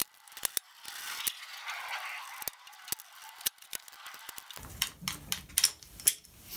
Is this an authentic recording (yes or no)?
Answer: yes